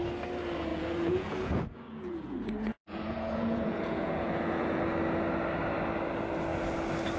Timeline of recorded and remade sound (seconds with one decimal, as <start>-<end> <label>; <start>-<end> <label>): 0.0-0.7 recorded; 0.7-4.8 remade; 4.8-7.2 recorded